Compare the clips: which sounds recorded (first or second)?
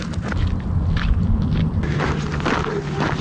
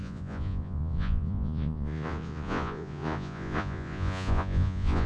first